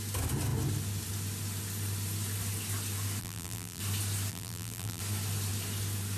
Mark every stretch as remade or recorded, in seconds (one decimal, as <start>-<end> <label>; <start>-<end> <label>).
0.0-3.2 recorded; 3.2-3.8 remade; 3.8-4.3 recorded; 4.3-5.0 remade; 5.0-6.2 recorded